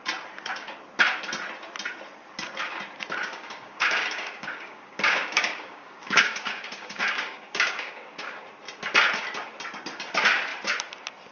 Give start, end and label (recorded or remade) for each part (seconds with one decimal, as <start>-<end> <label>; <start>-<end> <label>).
0.0-3.2 recorded; 3.2-8.4 remade; 8.4-11.3 recorded